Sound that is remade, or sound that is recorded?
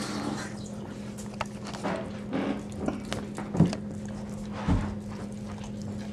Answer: recorded